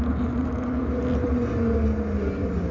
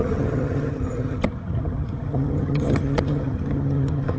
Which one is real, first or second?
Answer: first